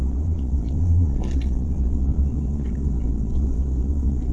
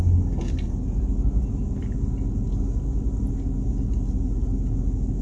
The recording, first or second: second